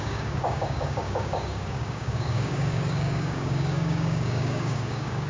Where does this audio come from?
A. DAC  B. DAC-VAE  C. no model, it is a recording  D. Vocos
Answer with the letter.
A